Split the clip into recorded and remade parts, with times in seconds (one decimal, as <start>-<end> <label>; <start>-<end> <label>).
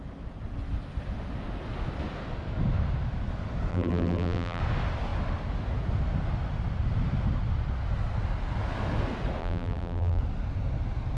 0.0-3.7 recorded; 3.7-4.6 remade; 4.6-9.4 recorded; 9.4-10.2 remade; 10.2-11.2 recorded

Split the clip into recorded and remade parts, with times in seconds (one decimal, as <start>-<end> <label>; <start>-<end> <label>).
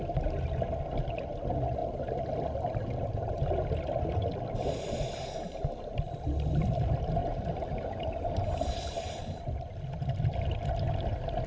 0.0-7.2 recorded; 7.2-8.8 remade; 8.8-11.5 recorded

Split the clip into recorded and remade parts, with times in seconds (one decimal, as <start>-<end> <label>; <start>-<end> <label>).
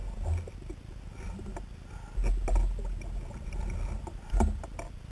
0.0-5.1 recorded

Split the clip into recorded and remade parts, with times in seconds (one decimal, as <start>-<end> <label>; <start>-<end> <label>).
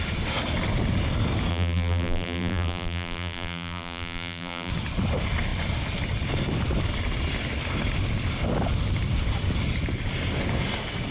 0.0-1.5 recorded; 1.5-4.7 remade; 4.7-11.1 recorded